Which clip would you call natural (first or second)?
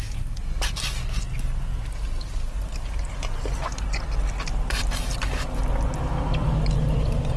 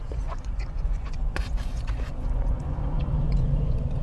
first